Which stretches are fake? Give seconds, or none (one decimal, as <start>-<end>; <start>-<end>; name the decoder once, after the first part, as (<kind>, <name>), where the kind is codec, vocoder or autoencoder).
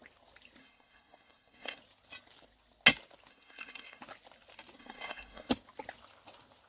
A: 0.6-1.8 (codec, SNAC); 3.3-4.0; 4.8-5.5